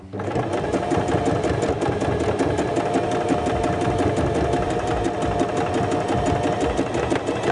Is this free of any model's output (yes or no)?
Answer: yes